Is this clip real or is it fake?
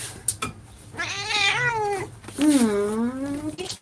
real